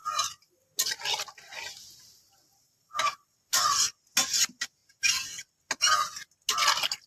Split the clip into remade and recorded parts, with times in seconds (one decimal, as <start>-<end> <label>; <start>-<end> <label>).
0.0-2.5 recorded; 2.5-3.4 remade; 3.4-7.1 recorded